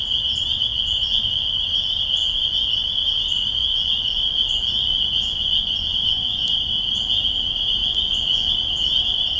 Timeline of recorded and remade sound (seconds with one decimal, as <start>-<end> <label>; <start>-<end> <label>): 0.0-0.7 recorded; 0.7-1.7 remade; 1.7-2.2 recorded; 2.2-2.7 remade; 2.7-3.6 recorded; 3.6-6.4 remade; 6.4-7.8 recorded; 7.8-8.5 remade; 8.5-9.4 recorded